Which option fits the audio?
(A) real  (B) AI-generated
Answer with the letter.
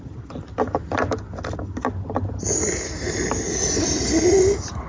A